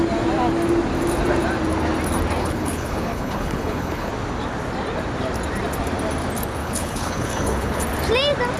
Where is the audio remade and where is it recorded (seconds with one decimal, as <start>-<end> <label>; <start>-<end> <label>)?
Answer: 0.0-2.4 recorded; 2.4-4.1 remade; 4.1-6.6 recorded; 6.6-7.8 remade; 7.8-8.6 recorded